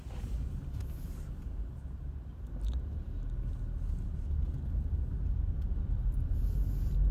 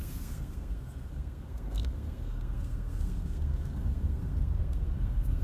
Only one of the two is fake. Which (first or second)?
second